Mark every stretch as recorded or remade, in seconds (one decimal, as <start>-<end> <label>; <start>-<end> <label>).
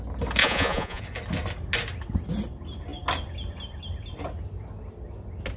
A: 0.0-0.4 recorded; 0.4-1.0 remade; 1.0-5.6 recorded